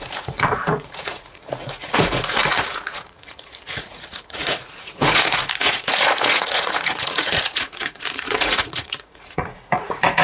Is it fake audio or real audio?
fake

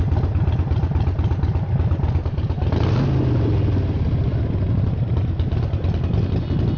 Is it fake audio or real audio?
real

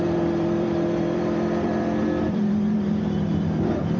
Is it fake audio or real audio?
fake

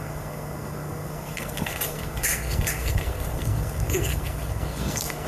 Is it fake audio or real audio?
fake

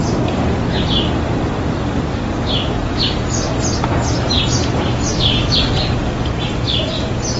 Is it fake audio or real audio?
real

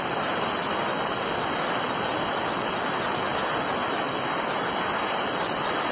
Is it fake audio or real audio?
real